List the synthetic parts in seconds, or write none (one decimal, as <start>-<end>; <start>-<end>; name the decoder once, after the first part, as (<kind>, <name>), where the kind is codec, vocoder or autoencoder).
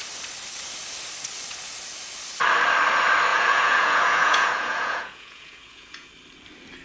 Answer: 3.3-6.1 (vocoder, Vocos)